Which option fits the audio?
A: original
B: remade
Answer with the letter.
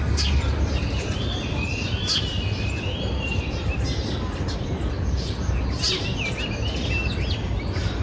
A